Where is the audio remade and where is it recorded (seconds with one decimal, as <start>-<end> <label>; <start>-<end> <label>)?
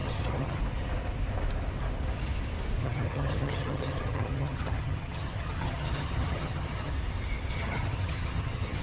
0.0-0.6 remade; 0.6-2.8 recorded; 2.8-6.9 remade; 6.9-7.5 recorded; 7.5-8.8 remade